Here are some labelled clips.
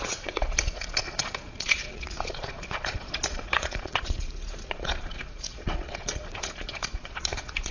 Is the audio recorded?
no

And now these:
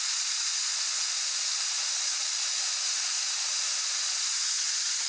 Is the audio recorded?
no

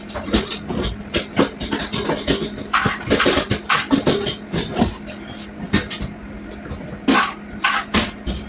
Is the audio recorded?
yes